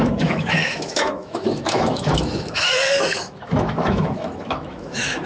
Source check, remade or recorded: remade